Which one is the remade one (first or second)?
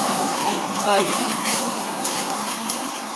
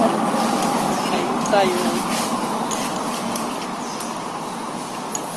first